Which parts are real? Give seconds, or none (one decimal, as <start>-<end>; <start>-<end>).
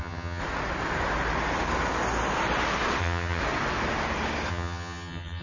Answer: 0.4-3.0; 3.4-4.5